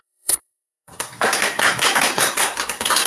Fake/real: fake